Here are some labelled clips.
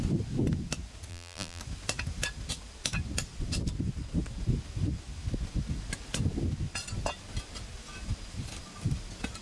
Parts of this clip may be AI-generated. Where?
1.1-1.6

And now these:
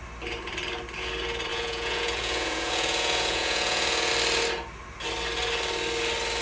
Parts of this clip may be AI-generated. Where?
1.5-4.1